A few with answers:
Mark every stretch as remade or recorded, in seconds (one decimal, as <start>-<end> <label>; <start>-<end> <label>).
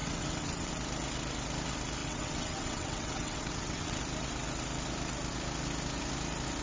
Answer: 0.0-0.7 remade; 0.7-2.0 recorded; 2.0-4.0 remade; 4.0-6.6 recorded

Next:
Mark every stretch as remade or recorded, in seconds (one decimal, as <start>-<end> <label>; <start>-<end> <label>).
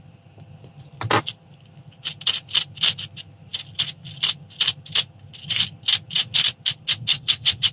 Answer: 0.0-7.1 recorded; 7.1-7.7 remade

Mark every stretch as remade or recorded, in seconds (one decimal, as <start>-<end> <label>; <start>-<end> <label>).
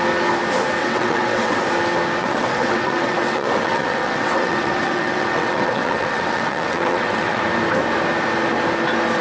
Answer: 0.0-0.8 recorded; 0.8-1.6 remade; 1.6-2.2 recorded; 2.2-7.4 remade; 7.4-9.2 recorded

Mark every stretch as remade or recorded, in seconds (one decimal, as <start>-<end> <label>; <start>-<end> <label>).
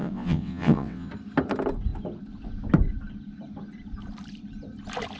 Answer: 0.0-1.1 remade; 1.1-5.2 recorded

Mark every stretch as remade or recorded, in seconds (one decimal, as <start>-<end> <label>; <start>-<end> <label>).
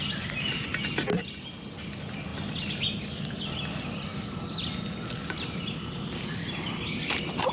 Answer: 0.0-7.5 recorded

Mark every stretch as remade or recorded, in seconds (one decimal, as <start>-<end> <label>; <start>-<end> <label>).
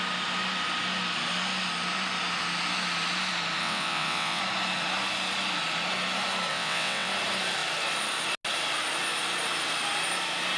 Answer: 0.0-3.6 recorded; 3.6-4.4 remade; 4.4-6.5 recorded; 6.5-7.1 remade; 7.1-10.6 recorded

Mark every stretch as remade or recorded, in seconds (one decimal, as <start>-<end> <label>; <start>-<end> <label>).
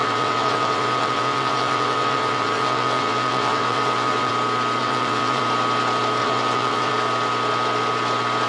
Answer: 0.0-4.3 remade; 4.3-4.8 recorded; 4.8-5.4 remade; 5.4-6.2 recorded; 6.2-6.9 remade; 6.9-8.5 recorded